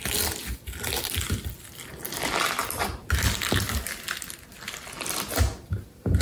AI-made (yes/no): no